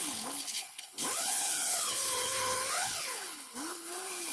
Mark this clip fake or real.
fake